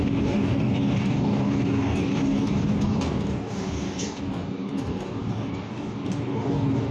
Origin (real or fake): fake